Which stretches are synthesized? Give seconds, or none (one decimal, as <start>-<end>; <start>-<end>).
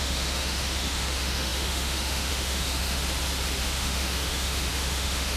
0.0-3.0; 3.6-5.4